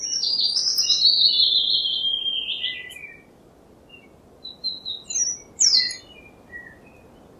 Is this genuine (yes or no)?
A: yes